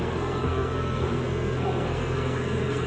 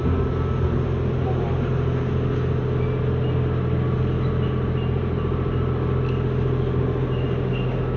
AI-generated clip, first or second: first